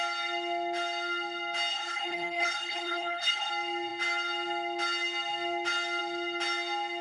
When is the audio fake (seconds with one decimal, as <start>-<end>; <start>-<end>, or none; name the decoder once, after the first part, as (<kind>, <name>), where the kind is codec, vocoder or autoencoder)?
1.7-3.5 (codec, HILCodec)